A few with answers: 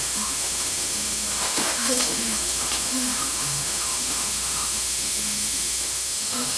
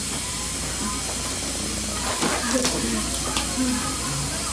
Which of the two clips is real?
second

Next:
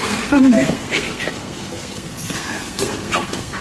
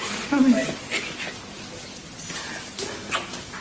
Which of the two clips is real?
second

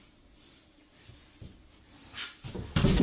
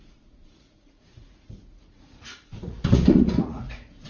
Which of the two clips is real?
first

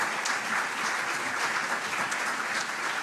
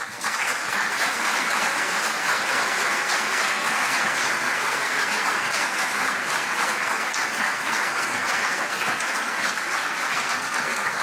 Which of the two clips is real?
first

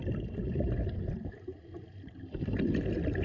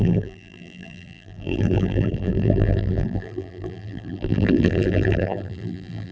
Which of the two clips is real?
first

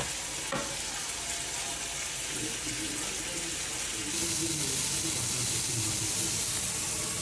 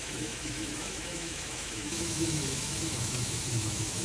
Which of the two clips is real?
first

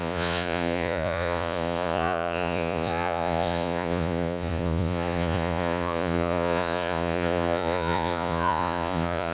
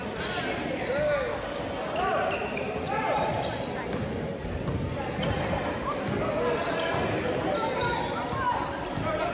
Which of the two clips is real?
second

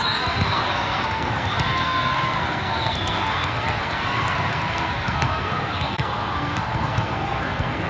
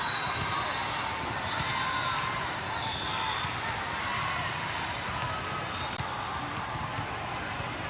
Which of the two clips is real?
second